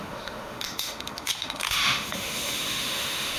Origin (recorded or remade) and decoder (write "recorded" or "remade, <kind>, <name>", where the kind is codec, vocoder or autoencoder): remade, autoencoder, DAC-VAE